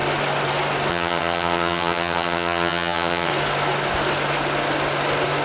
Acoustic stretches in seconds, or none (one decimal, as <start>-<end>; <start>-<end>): 0.0-0.9; 3.3-5.4